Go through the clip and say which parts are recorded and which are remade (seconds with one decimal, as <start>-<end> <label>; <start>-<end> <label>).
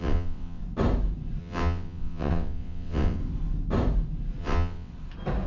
0.0-0.6 remade; 0.6-1.4 recorded; 1.4-3.2 remade; 3.2-4.4 recorded; 4.4-4.9 remade; 4.9-5.5 recorded